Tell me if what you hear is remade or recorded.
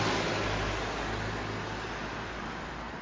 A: recorded